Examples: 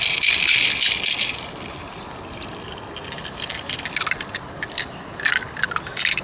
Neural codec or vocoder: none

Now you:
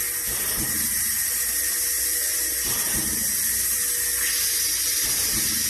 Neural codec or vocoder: none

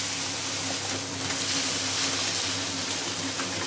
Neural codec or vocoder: none